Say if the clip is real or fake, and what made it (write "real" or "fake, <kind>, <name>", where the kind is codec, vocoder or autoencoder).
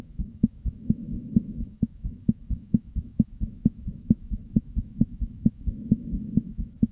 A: fake, autoencoder, DAC-VAE